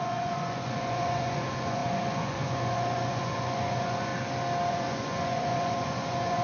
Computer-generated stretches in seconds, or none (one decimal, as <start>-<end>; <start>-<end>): 0.0-4.1; 4.7-6.4